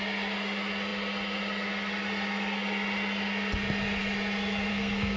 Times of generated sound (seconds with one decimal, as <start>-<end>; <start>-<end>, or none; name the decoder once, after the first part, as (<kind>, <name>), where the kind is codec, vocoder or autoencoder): 4.7-5.2 (codec, SNAC)